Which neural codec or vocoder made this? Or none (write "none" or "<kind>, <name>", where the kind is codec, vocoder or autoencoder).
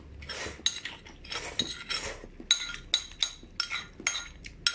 none